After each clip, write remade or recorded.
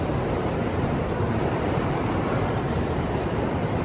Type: remade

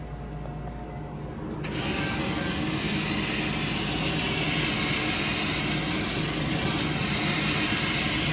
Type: recorded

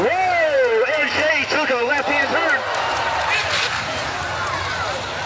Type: remade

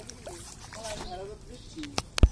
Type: recorded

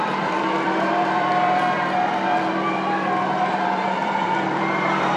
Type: remade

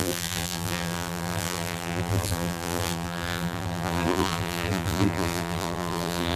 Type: remade